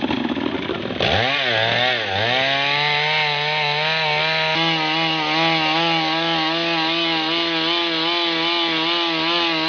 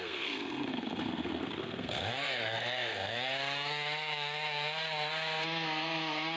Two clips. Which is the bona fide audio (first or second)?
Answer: first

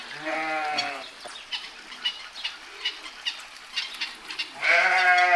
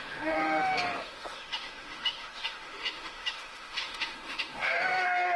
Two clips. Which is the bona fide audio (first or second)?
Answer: first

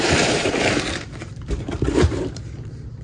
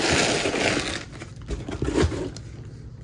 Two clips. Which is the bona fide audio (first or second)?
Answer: second